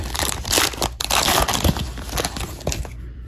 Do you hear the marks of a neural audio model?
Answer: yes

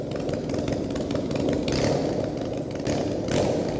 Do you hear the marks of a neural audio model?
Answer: no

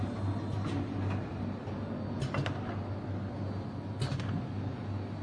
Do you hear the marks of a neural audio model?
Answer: no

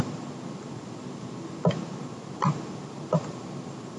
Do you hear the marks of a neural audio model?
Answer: no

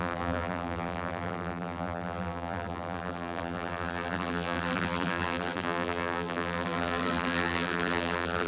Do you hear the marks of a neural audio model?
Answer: yes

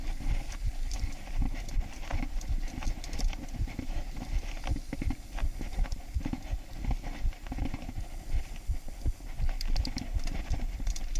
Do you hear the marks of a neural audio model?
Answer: yes